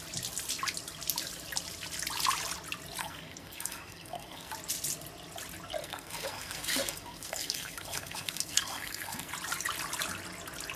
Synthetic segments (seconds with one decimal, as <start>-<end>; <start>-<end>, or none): 3.0-4.5; 5.8-9.3